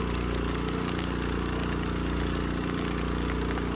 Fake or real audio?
real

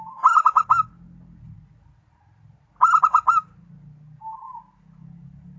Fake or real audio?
real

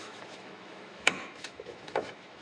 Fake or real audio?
fake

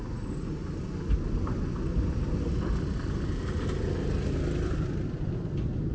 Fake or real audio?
real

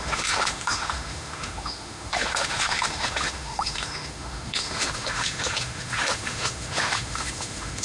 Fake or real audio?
fake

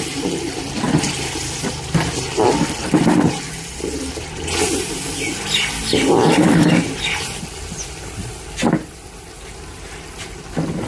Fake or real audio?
real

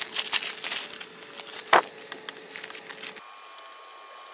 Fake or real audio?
real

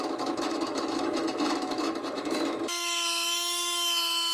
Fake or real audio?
fake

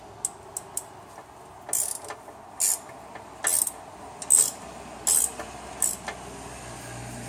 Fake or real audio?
real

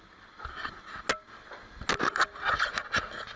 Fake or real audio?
real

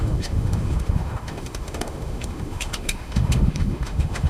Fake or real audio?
fake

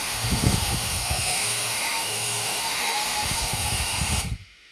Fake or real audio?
fake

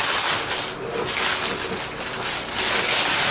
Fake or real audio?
real